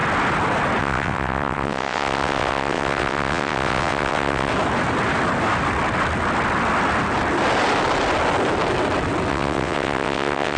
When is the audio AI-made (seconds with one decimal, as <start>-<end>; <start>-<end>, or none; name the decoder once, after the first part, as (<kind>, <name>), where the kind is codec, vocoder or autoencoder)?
0.8-4.5 (vocoder, WaveNeXt); 9.3-10.6

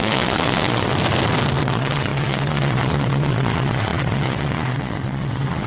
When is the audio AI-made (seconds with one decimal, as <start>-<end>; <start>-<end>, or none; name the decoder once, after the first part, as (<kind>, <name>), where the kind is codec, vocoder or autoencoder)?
0.0-0.9 (vocoder, WaveNeXt); 1.6-5.7

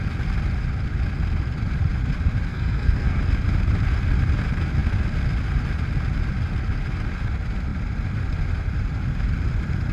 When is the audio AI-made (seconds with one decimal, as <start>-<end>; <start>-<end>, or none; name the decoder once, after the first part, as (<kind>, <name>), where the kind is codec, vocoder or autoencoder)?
2.5-3.2 (codec, SNAC)

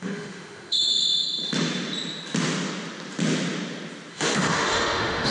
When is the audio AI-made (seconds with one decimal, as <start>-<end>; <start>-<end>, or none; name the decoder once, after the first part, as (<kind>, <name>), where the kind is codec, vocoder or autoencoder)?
0.0-0.9 (autoencoder, DAC-VAE); 4.1-5.3